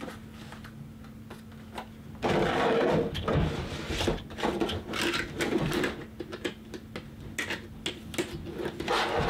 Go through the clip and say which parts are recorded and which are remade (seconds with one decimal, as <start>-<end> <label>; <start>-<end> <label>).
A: 0.0-9.3 recorded